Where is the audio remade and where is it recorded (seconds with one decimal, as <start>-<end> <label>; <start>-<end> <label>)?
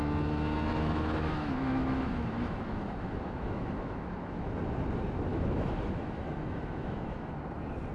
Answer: 0.0-0.7 recorded; 0.7-4.5 remade; 4.5-5.3 recorded; 5.3-7.3 remade; 7.3-7.9 recorded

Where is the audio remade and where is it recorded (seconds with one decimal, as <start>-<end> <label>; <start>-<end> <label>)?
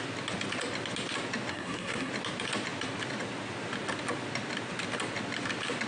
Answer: 0.0-1.5 recorded; 1.5-2.1 remade; 2.1-5.9 recorded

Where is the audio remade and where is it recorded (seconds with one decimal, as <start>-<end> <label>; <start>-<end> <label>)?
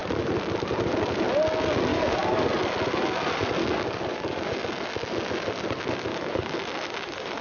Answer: 0.0-1.9 recorded; 1.9-2.5 remade; 2.5-3.6 recorded; 3.6-4.5 remade; 4.5-6.1 recorded; 6.1-6.6 remade; 6.6-7.4 recorded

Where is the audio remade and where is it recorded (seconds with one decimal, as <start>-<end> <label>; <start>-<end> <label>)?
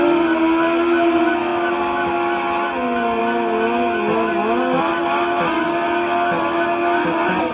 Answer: 0.0-7.5 recorded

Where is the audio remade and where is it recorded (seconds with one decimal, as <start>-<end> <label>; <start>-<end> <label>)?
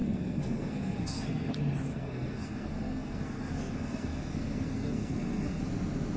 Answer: 0.0-1.5 remade; 1.5-1.9 recorded; 1.9-5.6 remade; 5.6-6.2 recorded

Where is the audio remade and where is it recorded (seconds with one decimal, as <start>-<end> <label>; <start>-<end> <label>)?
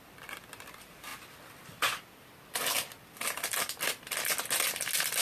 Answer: 0.0-5.2 recorded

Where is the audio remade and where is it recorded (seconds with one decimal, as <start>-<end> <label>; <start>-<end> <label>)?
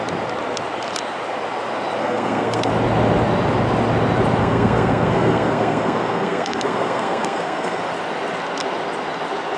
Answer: 0.0-2.0 recorded; 2.0-2.7 remade; 2.7-4.4 recorded; 4.4-7.8 remade; 7.8-9.6 recorded